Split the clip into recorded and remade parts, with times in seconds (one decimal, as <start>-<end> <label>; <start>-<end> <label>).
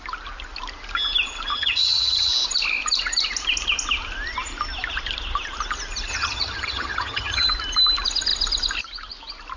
0.0-1.5 recorded; 1.5-2.3 remade; 2.3-6.1 recorded; 6.1-7.5 remade; 7.5-9.6 recorded